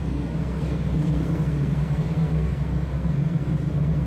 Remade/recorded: remade